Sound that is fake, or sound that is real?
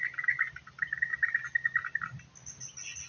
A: real